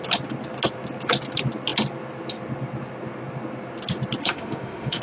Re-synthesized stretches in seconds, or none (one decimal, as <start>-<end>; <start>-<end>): 4.2-5.0